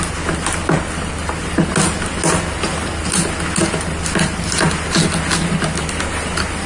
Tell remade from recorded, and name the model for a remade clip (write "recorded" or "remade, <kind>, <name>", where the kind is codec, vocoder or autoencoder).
recorded